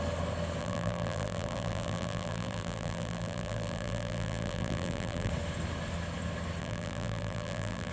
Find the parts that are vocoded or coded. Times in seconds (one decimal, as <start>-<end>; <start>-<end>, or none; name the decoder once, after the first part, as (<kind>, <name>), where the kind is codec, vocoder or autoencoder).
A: 0.6-5.3 (vocoder, BigVGAN v2); 6.6-7.9